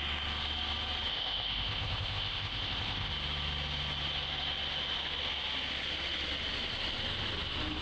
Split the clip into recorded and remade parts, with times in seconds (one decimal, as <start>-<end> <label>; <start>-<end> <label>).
0.0-1.1 recorded; 1.1-3.1 remade; 3.1-7.8 recorded